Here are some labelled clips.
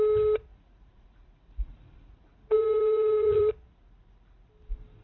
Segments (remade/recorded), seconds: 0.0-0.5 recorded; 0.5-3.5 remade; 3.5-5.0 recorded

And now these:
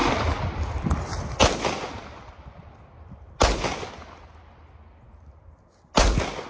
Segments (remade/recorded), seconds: 0.0-6.5 recorded